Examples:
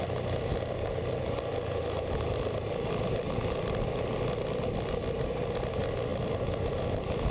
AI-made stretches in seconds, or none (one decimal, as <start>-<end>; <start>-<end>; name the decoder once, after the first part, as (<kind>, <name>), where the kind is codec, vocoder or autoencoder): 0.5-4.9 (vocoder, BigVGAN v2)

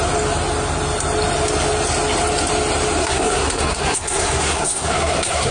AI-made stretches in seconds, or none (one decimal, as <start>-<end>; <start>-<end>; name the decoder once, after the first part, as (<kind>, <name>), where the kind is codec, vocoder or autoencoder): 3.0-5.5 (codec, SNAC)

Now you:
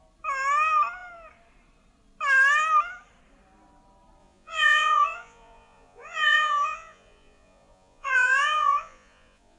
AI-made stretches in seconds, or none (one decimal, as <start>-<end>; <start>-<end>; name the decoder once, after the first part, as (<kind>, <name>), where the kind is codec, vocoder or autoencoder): 4.2-9.6 (vocoder, Vocos)

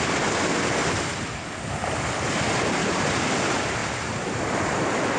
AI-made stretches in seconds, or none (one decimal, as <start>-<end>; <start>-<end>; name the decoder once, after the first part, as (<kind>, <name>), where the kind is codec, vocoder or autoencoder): 3.8-4.8 (vocoder, BigVGAN v2)